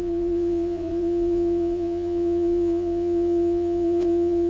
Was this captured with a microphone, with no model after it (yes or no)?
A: no